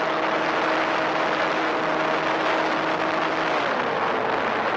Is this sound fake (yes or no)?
no